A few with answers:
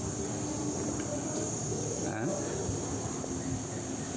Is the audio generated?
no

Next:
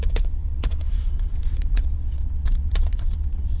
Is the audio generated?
yes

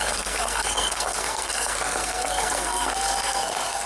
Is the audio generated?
yes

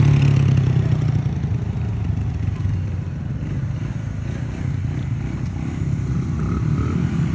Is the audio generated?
no